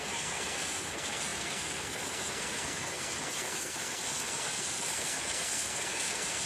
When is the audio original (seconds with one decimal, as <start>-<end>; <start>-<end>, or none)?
none